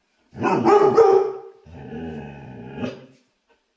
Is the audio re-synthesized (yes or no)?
no